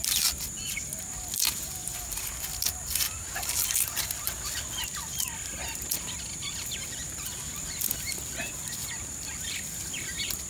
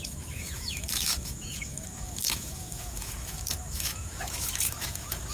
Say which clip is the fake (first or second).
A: second